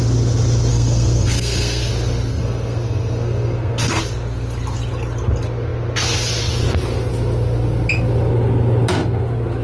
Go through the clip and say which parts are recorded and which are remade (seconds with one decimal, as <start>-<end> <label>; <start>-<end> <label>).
0.0-0.7 recorded; 0.7-1.9 remade; 1.9-2.3 recorded; 2.3-4.0 remade; 4.0-9.6 recorded